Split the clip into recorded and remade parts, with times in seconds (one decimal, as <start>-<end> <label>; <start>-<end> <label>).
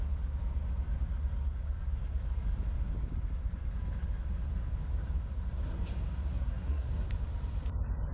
0.0-6.2 recorded; 6.2-6.9 remade; 6.9-8.1 recorded